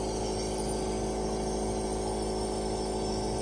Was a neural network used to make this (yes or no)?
no